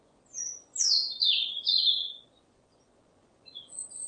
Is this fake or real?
fake